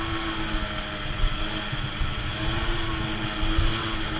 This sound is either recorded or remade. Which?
recorded